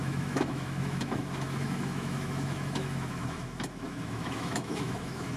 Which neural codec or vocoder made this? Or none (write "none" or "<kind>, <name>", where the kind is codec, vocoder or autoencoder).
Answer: autoencoder, DAC-VAE